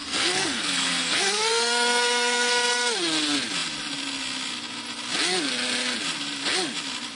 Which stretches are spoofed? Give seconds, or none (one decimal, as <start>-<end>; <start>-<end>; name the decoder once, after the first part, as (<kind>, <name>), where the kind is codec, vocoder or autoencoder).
0.0-2.5 (codec, SNAC)